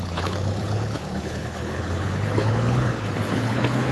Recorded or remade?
remade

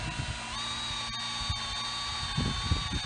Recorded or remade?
recorded